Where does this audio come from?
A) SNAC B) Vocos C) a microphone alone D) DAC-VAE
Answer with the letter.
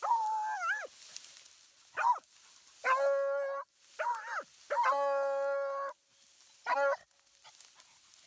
C